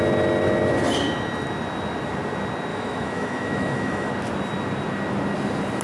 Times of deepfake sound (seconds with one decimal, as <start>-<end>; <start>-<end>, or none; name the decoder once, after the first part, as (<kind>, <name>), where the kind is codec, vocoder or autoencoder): 2.7-4.1 (autoencoder, DAC-VAE)